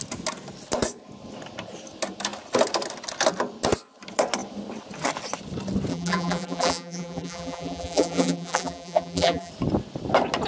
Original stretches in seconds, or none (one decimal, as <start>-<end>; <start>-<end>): 0.0-5.9; 9.5-10.5